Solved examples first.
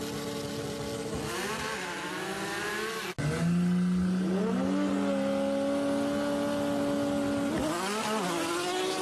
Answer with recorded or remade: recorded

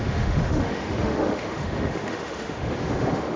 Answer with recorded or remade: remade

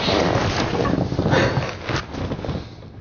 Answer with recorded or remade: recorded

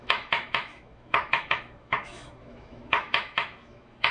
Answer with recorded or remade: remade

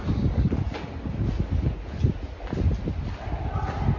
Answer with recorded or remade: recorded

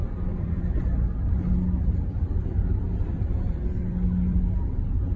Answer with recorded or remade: remade